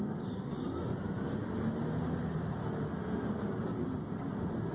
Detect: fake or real real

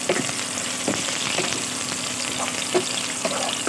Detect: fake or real real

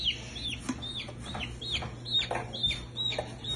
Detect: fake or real real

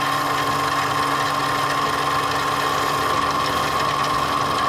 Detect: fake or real real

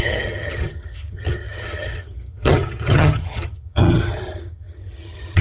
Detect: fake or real fake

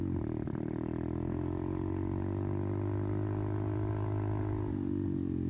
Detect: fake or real real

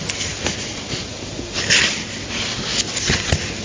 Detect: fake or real real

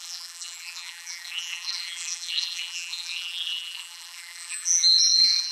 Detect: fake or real fake